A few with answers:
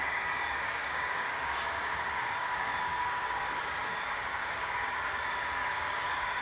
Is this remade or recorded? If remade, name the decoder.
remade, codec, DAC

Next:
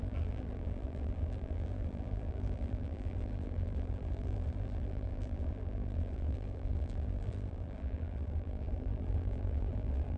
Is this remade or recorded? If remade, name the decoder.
remade, vocoder, BigVGAN v2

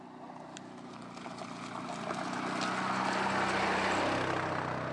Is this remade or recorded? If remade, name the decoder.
recorded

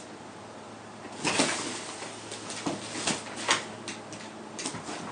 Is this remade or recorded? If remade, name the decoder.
recorded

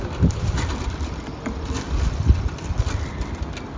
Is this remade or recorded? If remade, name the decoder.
remade, vocoder, BigVGAN v2